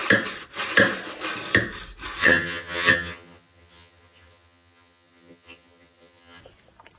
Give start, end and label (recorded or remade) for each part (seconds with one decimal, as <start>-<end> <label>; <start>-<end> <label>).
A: 0.0-2.2 recorded; 2.2-6.4 remade; 6.4-7.0 recorded